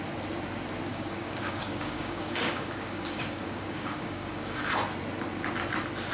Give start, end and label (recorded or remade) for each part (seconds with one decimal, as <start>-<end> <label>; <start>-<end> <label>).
0.0-0.9 recorded; 0.9-4.6 remade; 4.6-6.1 recorded